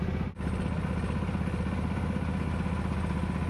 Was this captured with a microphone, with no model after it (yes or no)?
yes